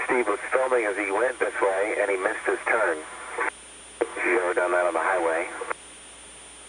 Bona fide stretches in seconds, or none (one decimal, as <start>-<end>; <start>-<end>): 0.0-6.7